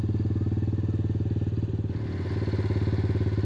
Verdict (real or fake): real